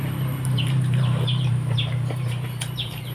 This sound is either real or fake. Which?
fake